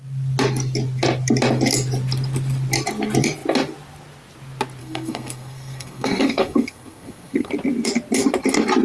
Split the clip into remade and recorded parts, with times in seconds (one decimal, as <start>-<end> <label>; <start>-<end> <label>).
0.0-4.8 recorded; 4.8-7.5 remade; 7.5-8.8 recorded